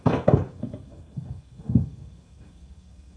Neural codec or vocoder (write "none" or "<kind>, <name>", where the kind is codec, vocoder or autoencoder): codec, SNAC